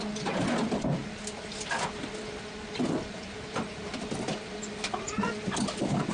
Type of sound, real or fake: real